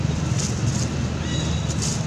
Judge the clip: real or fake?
real